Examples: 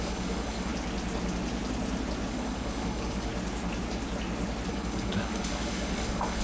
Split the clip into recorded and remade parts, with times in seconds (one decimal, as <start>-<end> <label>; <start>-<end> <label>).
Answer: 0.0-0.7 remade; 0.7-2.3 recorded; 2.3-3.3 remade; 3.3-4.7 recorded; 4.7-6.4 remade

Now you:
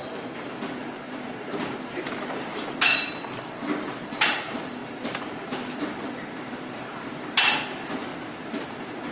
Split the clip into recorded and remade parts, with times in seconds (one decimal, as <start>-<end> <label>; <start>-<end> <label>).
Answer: 0.0-2.9 remade; 2.9-4.2 recorded; 4.2-9.1 remade

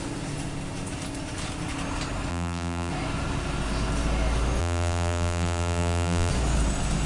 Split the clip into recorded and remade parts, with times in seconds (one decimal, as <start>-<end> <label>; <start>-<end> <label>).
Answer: 0.0-2.3 recorded; 2.3-2.9 remade; 2.9-4.6 recorded; 4.6-6.3 remade; 6.3-7.1 recorded

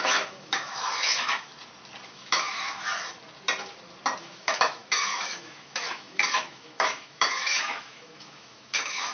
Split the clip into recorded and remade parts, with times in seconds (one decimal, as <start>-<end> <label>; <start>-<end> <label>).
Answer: 0.0-1.5 remade; 1.5-2.1 recorded; 2.1-2.9 remade; 2.9-4.2 recorded; 4.2-9.1 remade